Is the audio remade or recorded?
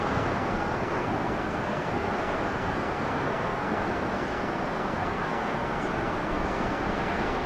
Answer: remade